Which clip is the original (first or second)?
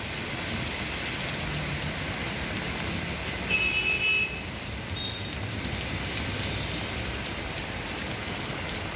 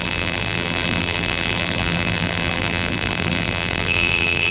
first